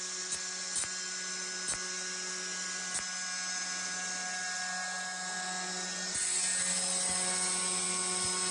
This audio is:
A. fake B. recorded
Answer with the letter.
B